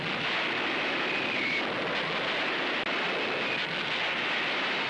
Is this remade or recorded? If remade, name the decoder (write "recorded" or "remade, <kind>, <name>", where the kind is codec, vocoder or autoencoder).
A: recorded